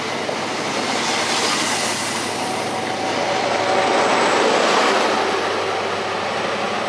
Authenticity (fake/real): real